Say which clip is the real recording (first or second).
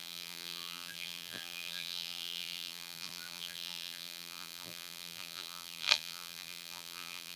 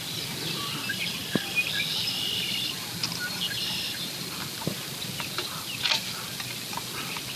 second